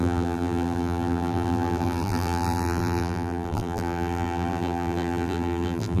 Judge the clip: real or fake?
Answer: fake